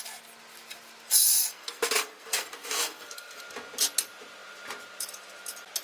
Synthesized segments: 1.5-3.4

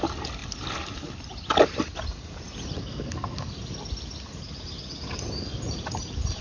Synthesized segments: 2.8-3.5